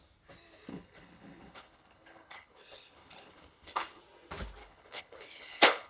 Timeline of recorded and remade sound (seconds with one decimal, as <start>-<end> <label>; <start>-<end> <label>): 0.0-0.7 recorded; 0.7-4.0 remade; 4.0-4.6 recorded; 4.6-5.9 remade